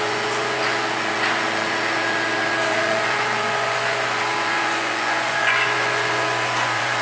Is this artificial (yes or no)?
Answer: yes